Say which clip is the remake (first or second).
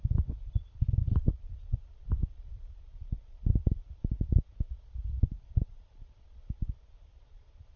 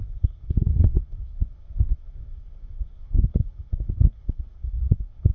second